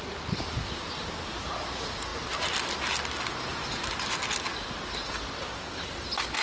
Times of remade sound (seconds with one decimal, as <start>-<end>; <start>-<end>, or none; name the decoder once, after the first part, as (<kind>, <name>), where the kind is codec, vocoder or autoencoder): none

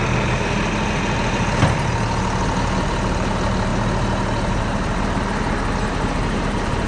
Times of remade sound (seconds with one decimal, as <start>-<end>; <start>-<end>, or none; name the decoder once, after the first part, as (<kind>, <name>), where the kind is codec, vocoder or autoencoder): 5.8-6.9 (vocoder, BigVGAN v2)

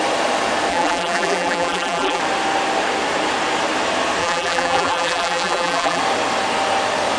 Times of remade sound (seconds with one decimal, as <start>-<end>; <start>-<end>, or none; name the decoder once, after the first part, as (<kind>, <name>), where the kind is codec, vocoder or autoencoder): 0.7-2.2 (vocoder, BigVGAN v2); 4.2-6.0

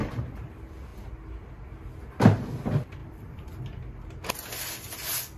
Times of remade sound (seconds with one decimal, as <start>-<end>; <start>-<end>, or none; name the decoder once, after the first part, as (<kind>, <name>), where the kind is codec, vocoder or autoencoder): 3.0-3.6 (vocoder, BigVGAN v2)

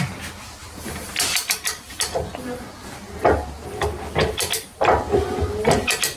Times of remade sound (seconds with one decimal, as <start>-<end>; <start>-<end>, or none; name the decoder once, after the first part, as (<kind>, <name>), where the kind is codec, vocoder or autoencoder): 0.6-4.3 (vocoder, BigVGAN v2); 4.7-5.5

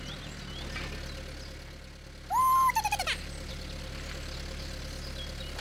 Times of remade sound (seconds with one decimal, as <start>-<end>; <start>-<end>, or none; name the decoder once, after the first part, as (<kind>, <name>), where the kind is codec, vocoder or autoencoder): none

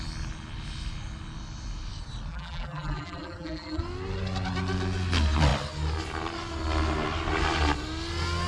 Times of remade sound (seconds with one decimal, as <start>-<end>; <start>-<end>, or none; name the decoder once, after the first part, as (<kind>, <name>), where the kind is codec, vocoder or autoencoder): 2.3-3.8 (vocoder, BigVGAN v2)